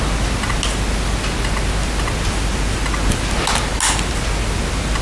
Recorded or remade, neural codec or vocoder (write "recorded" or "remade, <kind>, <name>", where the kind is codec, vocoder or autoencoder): recorded